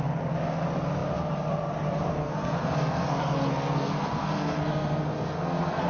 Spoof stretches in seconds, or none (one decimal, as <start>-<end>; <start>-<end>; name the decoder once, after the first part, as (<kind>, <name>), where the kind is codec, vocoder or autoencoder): 2.1-5.9 (codec, SNAC)